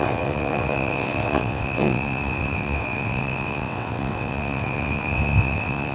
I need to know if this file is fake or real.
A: fake